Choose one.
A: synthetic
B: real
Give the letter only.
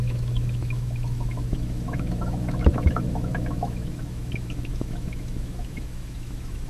A